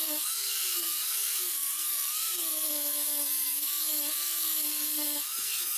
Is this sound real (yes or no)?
no